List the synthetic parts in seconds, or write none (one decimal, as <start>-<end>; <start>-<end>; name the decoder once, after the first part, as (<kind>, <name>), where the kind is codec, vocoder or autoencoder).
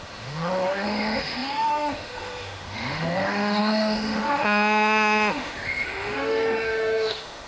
0.0-7.5 (autoencoder, DAC-VAE)